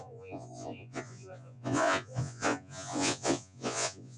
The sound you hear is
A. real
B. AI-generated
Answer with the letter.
B